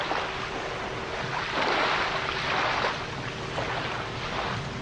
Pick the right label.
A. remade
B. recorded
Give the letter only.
B